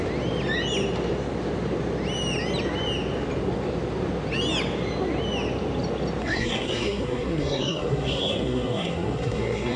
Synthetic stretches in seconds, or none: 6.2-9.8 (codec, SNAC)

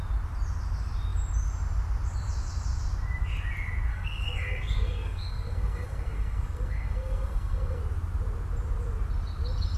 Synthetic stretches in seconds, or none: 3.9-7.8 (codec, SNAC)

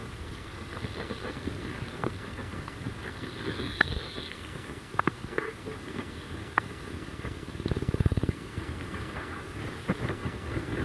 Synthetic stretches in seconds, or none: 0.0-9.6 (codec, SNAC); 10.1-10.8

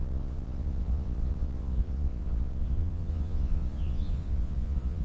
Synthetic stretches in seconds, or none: 0.0-5.0 (vocoder, Vocos)